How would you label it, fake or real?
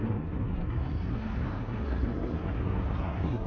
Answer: fake